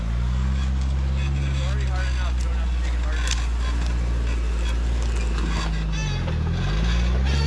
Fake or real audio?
real